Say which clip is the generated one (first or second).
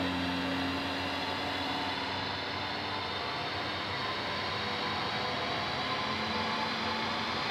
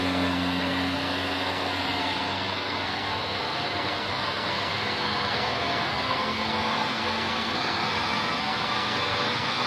second